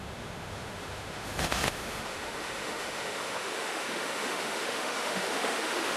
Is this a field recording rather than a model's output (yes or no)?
no